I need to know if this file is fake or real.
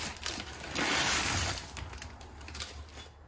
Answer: real